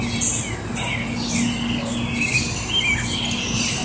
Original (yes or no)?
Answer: yes